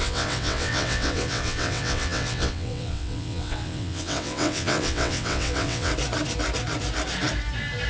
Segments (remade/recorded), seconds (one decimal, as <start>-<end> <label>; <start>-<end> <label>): 0.0-5.9 remade; 5.9-7.9 recorded